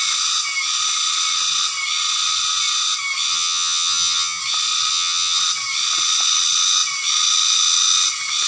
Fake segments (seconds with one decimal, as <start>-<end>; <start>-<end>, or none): 3.3-4.4; 4.9-5.4